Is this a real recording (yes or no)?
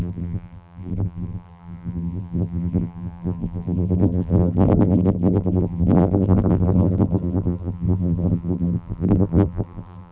no